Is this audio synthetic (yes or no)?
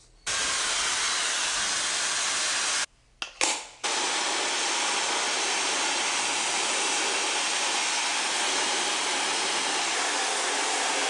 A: no